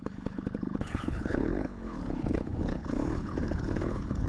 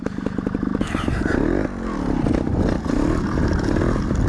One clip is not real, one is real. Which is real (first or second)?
second